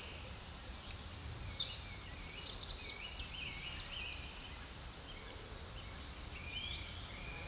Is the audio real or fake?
real